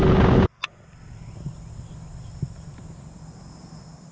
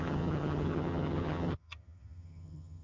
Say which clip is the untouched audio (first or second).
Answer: first